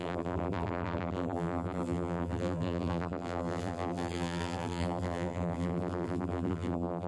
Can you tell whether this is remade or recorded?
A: remade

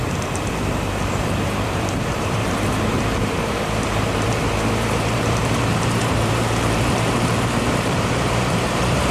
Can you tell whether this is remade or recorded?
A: remade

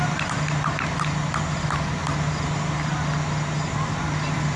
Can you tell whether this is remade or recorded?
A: recorded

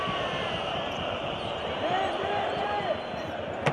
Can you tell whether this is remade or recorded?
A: remade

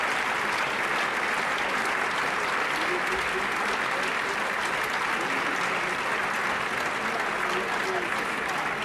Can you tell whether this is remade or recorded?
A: recorded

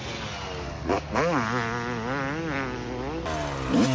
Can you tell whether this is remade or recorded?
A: recorded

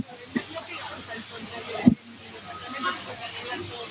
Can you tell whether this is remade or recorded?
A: recorded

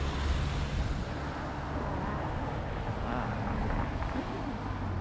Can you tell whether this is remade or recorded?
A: recorded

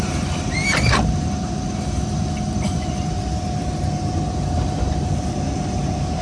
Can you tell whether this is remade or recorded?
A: remade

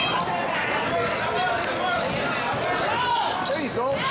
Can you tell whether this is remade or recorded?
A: recorded